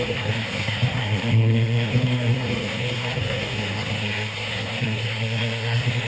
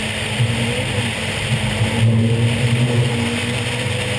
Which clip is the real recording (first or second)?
second